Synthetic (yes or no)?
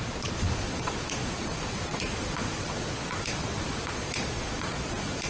yes